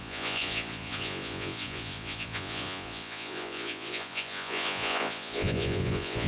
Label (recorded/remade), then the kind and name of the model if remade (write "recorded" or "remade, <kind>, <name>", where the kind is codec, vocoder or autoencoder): remade, vocoder, Vocos